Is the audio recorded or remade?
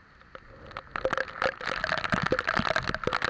recorded